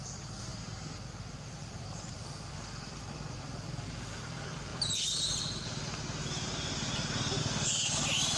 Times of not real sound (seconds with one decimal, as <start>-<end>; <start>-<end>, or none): 7.4-8.0